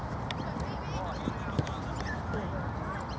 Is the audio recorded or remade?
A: recorded